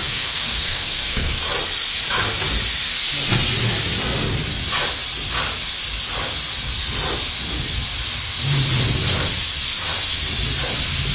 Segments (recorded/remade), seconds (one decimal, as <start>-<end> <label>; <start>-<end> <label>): 0.0-1.4 remade; 1.4-11.1 recorded